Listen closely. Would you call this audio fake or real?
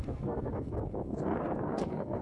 fake